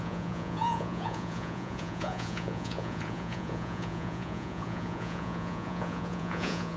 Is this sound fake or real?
fake